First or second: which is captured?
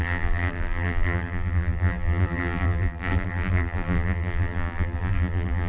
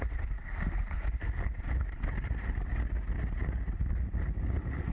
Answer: second